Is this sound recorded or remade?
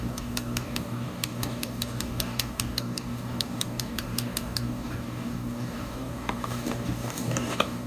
remade